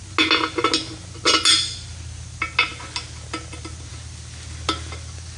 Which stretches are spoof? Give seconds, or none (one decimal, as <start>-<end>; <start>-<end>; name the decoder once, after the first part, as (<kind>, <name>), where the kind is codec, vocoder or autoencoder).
none